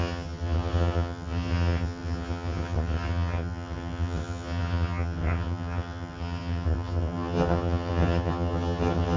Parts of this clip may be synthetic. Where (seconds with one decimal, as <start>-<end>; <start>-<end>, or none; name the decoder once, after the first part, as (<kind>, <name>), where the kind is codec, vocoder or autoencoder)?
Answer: 0.0-9.2 (vocoder, HiFi-GAN)

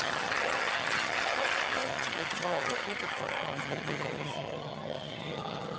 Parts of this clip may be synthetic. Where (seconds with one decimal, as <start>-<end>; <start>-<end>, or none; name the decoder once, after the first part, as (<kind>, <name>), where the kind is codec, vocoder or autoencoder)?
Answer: 0.0-5.8 (vocoder, HiFi-GAN)